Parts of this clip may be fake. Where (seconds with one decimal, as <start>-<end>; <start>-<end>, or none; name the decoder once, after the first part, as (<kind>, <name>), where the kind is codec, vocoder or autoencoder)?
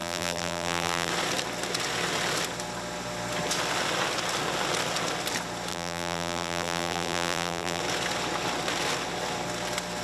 0.0-1.1 (vocoder, BigVGAN v2); 5.7-7.8